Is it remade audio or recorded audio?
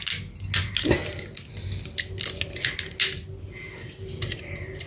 recorded